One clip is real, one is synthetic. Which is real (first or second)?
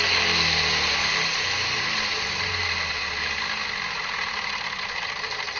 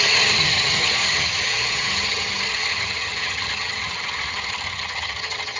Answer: first